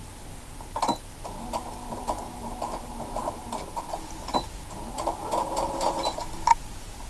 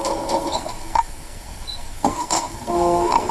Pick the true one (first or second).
first